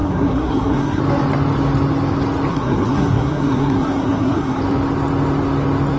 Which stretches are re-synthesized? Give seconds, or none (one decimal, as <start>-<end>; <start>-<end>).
0.0-1.0; 2.5-4.6